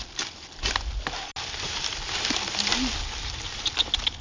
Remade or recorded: recorded